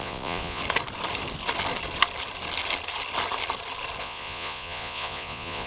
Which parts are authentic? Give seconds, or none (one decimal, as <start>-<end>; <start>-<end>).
0.6-4.0